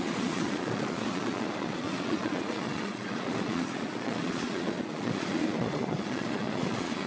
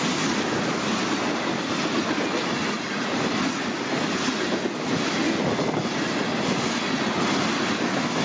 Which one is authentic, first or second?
second